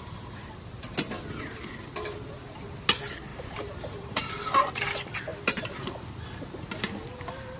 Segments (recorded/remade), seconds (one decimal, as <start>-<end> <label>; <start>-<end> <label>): 0.0-3.3 recorded; 3.3-4.3 remade; 4.3-5.3 recorded; 5.3-6.2 remade; 6.2-7.6 recorded

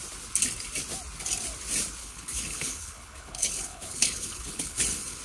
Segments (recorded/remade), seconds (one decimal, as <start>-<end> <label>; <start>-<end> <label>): 0.0-2.0 recorded; 2.0-5.2 remade